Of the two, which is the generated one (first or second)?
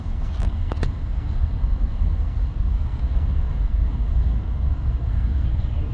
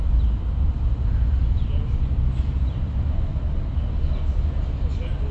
first